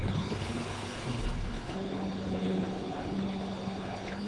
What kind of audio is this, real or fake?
fake